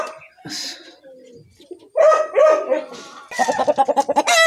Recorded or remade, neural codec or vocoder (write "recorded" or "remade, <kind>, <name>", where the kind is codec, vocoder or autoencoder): recorded